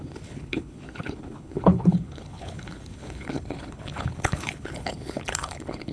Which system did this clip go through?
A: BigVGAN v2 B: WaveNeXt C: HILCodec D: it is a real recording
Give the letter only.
C